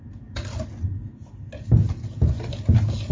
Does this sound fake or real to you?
real